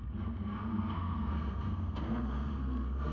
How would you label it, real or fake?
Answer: fake